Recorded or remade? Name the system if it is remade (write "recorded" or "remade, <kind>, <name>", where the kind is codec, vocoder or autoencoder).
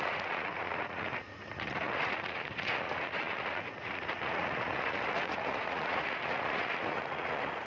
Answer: remade, vocoder, Vocos